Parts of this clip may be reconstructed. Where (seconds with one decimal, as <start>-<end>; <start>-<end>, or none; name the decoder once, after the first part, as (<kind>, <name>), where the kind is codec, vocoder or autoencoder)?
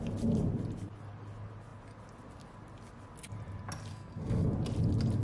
3.9-4.5 (codec, SNAC)